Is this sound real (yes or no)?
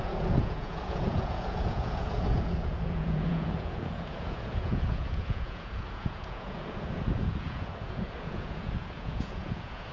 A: no